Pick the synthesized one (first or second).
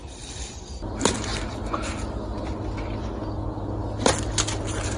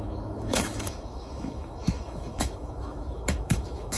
second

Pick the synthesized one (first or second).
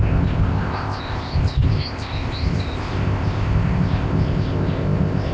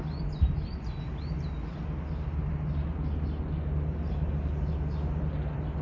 first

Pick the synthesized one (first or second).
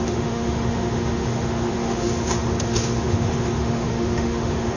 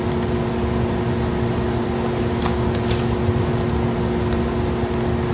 first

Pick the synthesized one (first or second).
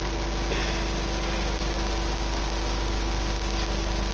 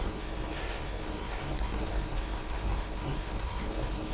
second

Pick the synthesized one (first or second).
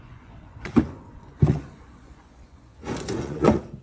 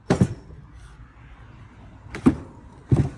first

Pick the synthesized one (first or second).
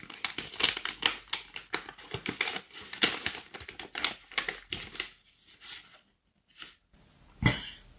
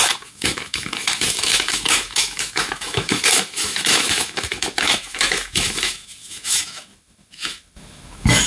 second